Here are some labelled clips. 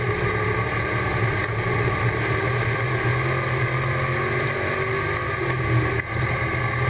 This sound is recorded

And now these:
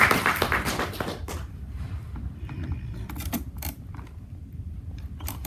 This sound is remade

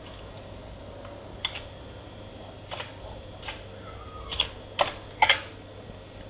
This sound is recorded